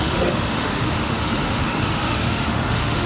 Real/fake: fake